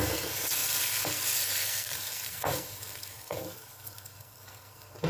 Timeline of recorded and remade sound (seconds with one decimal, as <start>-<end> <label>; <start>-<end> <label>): 0.0-5.1 remade